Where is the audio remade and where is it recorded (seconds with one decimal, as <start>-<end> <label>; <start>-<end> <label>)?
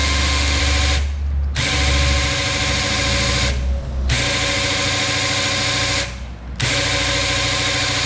0.0-0.6 remade; 0.6-8.1 recorded